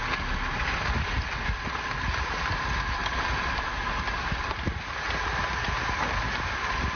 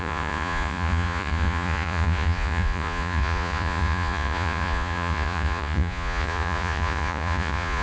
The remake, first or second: second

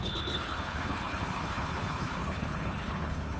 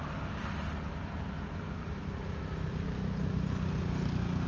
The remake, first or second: first